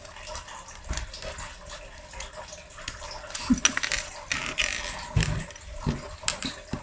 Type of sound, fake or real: real